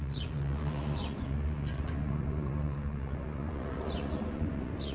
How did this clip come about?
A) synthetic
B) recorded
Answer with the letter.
A